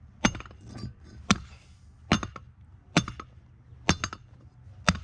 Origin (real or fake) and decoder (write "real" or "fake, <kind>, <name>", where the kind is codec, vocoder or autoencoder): real